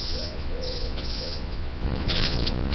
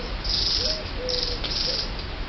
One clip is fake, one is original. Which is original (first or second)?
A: second